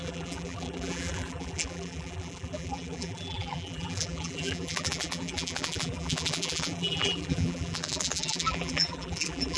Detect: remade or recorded remade